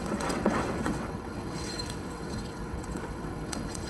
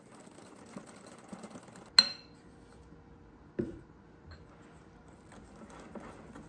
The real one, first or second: second